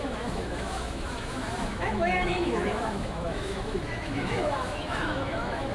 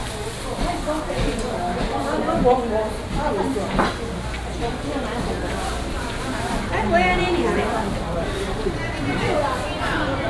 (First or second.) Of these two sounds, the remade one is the first